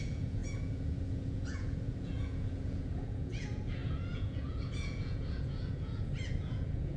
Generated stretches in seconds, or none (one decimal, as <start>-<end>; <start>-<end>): 0.0-7.0